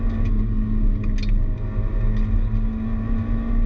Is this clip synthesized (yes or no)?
no